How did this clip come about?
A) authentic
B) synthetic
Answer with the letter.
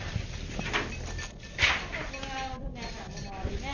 A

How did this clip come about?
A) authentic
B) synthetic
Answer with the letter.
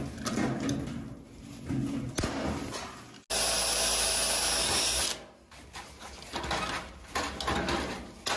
A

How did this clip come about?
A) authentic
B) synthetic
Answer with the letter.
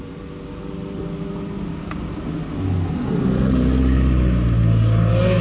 A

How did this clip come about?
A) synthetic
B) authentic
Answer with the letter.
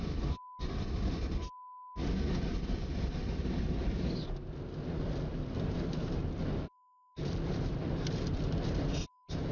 B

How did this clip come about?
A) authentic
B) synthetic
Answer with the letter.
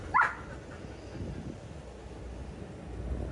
A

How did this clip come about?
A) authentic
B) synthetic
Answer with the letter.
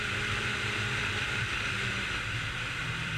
B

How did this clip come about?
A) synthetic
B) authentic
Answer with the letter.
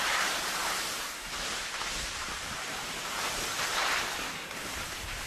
A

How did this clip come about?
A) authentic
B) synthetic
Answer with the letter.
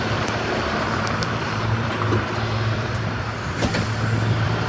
B